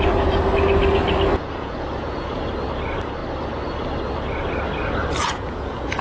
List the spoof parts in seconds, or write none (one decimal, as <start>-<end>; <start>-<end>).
1.3-2.4; 5.2-6.0